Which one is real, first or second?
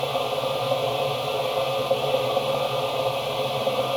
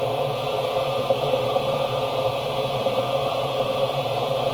first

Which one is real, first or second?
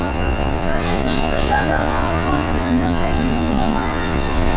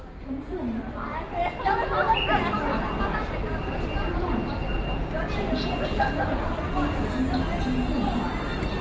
second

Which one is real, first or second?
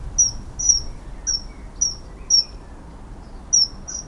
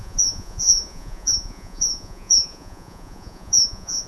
first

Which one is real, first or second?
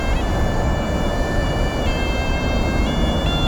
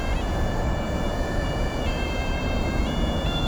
first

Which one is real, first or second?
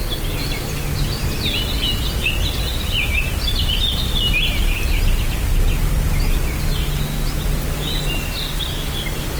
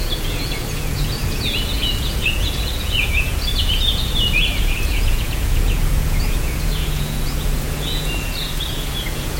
first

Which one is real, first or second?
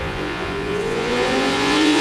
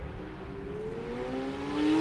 second